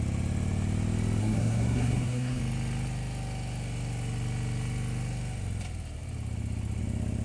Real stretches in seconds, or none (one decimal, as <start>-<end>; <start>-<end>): 0.0-1.2; 2.4-7.2